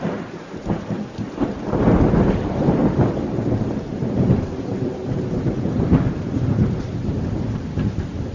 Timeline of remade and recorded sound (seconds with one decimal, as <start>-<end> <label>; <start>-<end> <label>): 0.0-2.8 remade; 2.8-3.9 recorded; 3.9-5.0 remade; 5.0-5.8 recorded; 5.8-8.3 remade